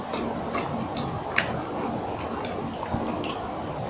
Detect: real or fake real